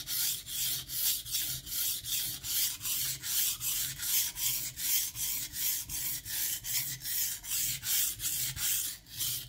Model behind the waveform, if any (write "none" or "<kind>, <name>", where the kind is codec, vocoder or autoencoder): none